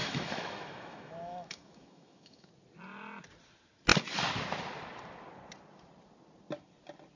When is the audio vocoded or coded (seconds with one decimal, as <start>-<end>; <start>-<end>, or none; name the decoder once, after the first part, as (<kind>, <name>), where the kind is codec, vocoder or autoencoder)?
0.0-2.5 (autoencoder, DAC-VAE)